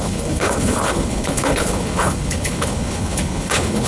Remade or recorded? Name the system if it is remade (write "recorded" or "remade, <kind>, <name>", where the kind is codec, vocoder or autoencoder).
remade, codec, HILCodec